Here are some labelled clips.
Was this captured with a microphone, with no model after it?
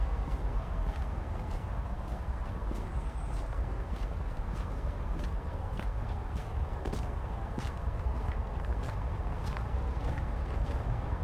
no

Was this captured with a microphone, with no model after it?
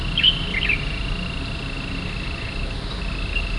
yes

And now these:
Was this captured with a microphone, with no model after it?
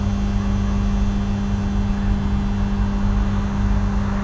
yes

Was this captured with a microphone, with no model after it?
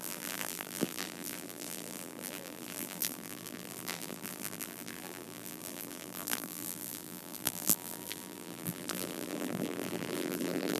no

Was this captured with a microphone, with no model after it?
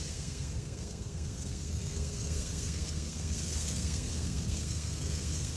no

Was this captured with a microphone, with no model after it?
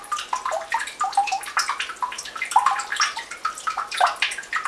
no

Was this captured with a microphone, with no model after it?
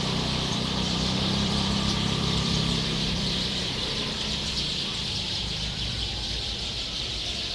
no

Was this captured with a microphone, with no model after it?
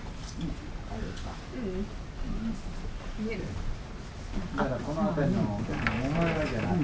yes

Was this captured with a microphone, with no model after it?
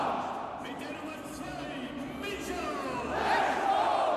yes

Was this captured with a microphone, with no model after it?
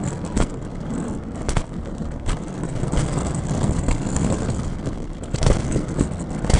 no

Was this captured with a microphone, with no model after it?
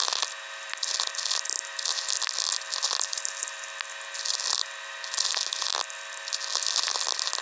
yes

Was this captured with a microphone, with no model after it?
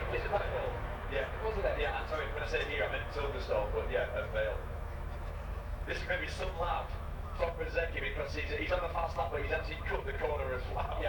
no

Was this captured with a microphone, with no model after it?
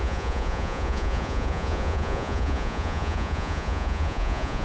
no